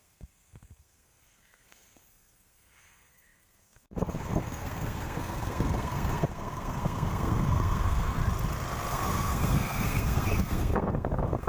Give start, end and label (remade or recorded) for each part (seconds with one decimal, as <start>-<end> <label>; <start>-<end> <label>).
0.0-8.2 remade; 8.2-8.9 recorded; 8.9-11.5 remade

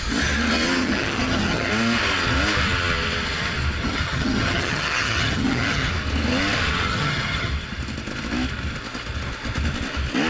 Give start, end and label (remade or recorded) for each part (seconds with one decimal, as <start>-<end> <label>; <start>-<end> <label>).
0.0-0.8 recorded; 0.8-1.7 remade; 1.7-3.8 recorded; 3.8-5.9 remade; 5.9-6.9 recorded; 6.9-7.5 remade; 7.5-10.3 recorded

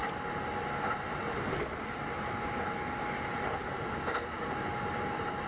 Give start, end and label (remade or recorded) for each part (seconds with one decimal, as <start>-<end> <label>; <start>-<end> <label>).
0.0-5.5 recorded

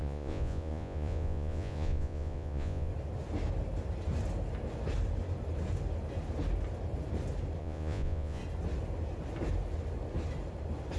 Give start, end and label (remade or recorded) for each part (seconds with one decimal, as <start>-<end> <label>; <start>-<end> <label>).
0.0-2.9 remade; 2.9-7.6 recorded; 7.6-8.4 remade; 8.4-11.0 recorded

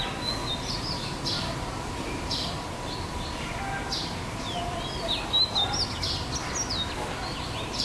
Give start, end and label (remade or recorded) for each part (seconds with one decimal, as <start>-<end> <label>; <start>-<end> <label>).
0.0-0.4 recorded; 0.4-3.6 remade; 3.6-7.8 recorded

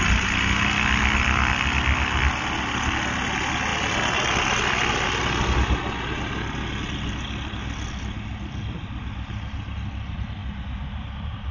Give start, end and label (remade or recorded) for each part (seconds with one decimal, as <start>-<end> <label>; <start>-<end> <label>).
0.0-10.4 recorded; 10.4-11.5 remade

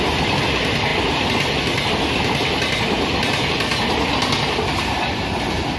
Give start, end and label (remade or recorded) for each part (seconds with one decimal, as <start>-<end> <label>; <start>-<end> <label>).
0.0-5.8 recorded